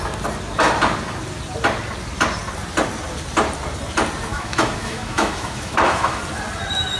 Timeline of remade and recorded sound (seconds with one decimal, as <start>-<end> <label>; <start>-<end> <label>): 0.0-4.3 recorded; 4.3-6.2 remade; 6.2-7.0 recorded